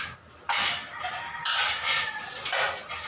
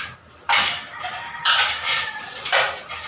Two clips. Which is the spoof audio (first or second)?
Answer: second